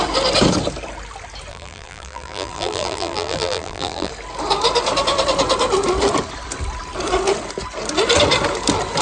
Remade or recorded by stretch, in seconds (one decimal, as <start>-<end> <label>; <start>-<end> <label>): 0.0-1.5 recorded; 1.5-4.1 remade; 4.1-9.0 recorded